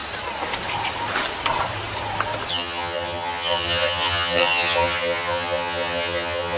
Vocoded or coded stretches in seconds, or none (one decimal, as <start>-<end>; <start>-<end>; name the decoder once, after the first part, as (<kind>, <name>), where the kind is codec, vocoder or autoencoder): 2.5-6.6 (vocoder, HiFi-GAN)

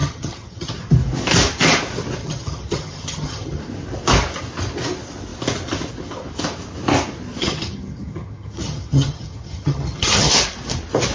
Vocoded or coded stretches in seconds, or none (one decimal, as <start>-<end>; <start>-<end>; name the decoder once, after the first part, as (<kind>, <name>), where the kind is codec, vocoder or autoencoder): 0.0-0.7 (vocoder, HiFi-GAN); 2.2-3.6; 7.4-10.3

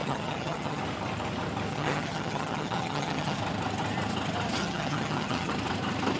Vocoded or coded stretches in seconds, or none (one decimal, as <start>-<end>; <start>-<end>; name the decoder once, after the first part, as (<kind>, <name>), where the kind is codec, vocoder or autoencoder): 0.0-0.8 (vocoder, HiFi-GAN); 1.7-3.4; 4.6-5.5

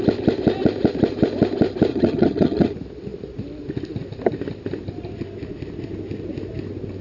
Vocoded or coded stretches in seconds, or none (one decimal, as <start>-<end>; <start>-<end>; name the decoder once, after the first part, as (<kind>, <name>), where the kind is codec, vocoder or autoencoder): 1.9-2.7 (vocoder, HiFi-GAN)

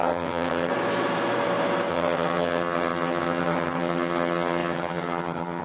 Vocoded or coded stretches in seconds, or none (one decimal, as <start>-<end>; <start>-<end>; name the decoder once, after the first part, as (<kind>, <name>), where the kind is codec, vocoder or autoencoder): 0.0-0.7 (vocoder, HiFi-GAN); 1.9-5.6

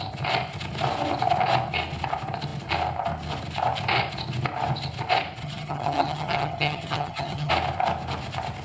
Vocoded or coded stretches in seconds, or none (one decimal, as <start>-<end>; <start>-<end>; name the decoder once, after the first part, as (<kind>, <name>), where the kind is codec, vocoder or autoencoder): 5.4-7.5 (vocoder, HiFi-GAN)

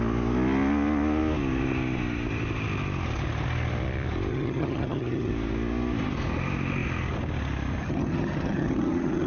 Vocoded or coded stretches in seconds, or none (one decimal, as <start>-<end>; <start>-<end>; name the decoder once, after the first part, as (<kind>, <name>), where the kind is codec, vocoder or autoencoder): 4.3-5.3 (vocoder, HiFi-GAN); 7.8-9.3

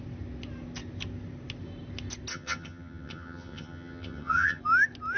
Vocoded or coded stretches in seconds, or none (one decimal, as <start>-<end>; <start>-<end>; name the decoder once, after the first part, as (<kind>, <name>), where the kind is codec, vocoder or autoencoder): 2.3-4.6 (vocoder, HiFi-GAN)